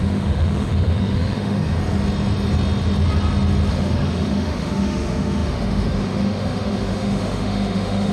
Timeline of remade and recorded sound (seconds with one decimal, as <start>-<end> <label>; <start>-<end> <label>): 0.0-1.8 remade; 1.8-3.7 recorded; 3.7-8.1 remade